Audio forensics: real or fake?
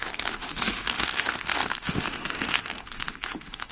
fake